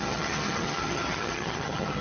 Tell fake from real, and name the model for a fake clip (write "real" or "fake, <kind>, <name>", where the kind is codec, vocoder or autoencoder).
fake, vocoder, HiFi-GAN